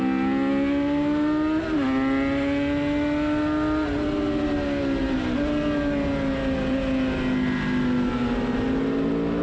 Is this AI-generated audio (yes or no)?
no